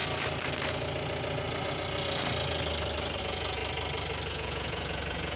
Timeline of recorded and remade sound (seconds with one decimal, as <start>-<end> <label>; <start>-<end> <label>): 0.0-3.2 recorded; 3.2-3.6 remade; 3.6-4.3 recorded; 4.3-5.4 remade